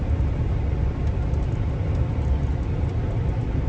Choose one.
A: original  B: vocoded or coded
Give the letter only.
A